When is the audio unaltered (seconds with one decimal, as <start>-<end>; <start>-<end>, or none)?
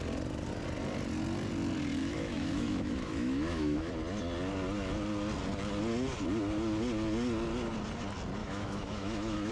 0.0-2.0; 3.9-8.4